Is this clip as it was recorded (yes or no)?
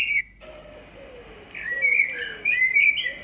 yes